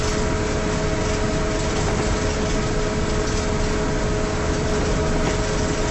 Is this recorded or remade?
recorded